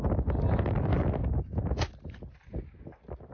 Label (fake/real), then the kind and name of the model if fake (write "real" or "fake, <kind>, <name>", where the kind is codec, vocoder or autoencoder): real